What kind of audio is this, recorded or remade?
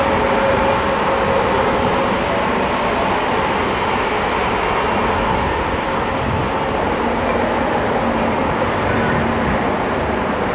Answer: recorded